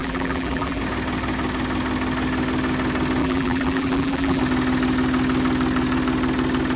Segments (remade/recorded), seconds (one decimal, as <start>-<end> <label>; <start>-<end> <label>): 0.0-0.8 remade; 0.8-3.2 recorded; 3.2-4.4 remade; 4.4-6.8 recorded